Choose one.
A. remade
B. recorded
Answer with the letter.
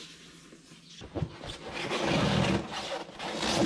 B